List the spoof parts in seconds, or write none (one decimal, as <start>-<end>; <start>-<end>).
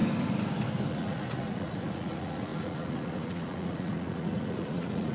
0.9-5.1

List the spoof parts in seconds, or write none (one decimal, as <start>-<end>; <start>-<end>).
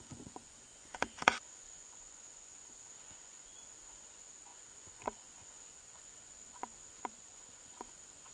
0.0-8.3